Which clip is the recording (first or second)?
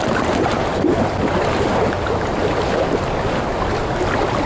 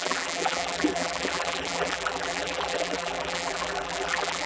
first